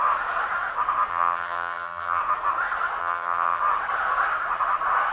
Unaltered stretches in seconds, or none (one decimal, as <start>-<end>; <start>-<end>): 0.0-1.1; 2.2-3.0; 3.6-5.1